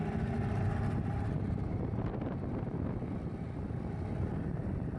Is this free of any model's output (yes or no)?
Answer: yes